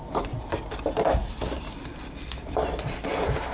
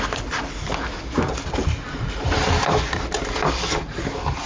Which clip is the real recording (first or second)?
second